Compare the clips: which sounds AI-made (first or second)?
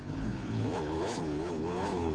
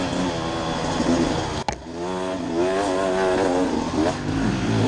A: first